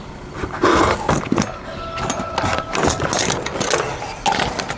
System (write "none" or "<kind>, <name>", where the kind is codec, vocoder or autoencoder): none